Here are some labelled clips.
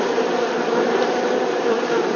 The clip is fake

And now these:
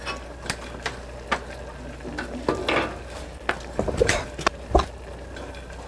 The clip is real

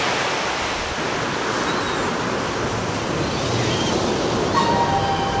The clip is real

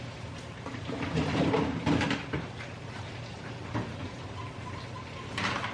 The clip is fake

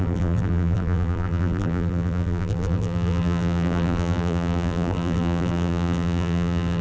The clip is fake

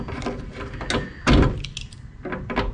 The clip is real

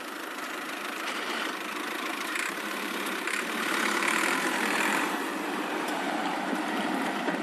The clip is fake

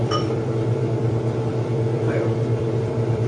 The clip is fake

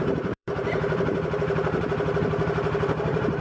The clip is fake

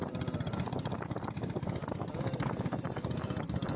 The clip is fake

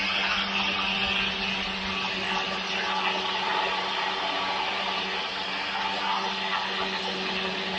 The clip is real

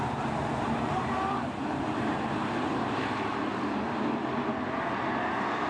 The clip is fake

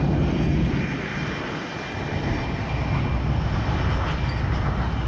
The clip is real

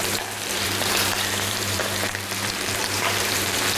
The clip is fake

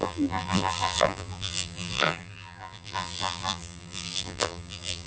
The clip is fake